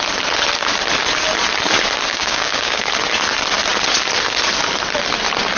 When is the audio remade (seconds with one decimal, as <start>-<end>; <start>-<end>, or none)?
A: 2.1-2.9